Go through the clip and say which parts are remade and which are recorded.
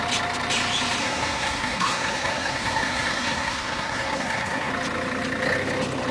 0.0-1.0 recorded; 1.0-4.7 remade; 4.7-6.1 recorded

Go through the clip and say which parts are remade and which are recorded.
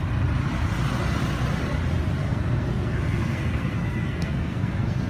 0.0-2.2 recorded; 2.2-5.1 remade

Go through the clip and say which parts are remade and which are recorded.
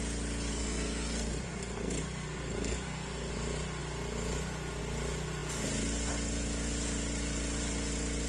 0.0-0.5 recorded; 0.5-3.3 remade; 3.3-8.3 recorded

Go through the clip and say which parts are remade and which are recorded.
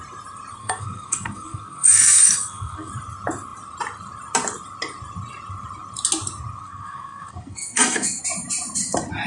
0.0-0.6 recorded; 0.6-2.9 remade; 2.9-6.6 recorded; 6.6-8.2 remade; 8.2-9.3 recorded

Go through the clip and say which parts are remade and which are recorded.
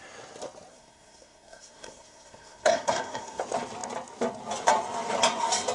0.0-0.7 recorded; 0.7-3.4 remade; 3.4-5.7 recorded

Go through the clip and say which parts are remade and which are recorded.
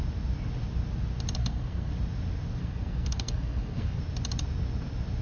0.0-1.4 recorded; 1.4-1.9 remade; 1.9-2.6 recorded; 2.6-4.0 remade; 4.0-5.2 recorded